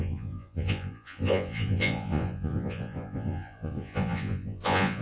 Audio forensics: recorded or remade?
remade